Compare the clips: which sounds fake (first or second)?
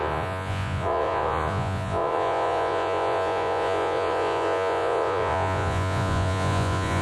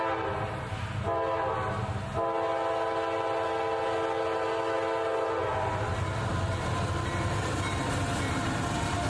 first